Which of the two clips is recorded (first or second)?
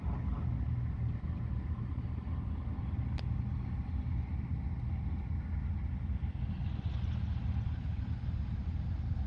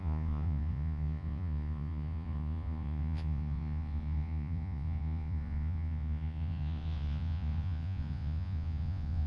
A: first